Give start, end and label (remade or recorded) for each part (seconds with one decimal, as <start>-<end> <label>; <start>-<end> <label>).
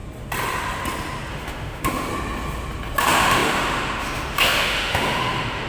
0.0-1.3 recorded; 1.3-2.1 remade; 2.1-3.0 recorded; 3.0-5.7 remade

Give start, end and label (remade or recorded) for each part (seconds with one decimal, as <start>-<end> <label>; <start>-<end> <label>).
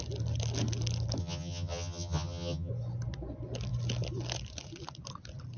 0.0-1.2 recorded; 1.2-2.7 remade; 2.7-5.6 recorded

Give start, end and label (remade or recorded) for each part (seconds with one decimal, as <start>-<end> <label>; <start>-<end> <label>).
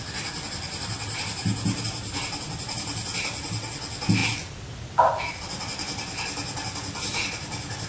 0.0-7.9 recorded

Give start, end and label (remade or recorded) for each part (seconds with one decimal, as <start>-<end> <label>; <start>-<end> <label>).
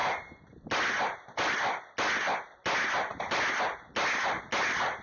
0.0-5.0 recorded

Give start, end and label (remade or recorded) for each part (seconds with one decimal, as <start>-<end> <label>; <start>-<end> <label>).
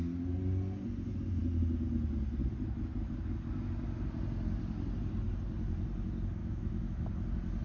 0.0-6.4 recorded; 6.4-7.1 remade; 7.1-7.6 recorded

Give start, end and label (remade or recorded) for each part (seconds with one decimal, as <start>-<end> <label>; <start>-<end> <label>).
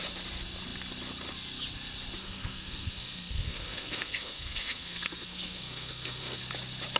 0.0-2.2 recorded; 2.2-6.4 remade; 6.4-7.0 recorded